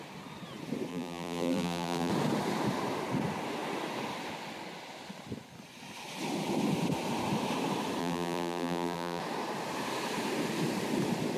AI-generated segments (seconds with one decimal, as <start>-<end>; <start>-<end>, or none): 0.9-2.1; 8.0-9.2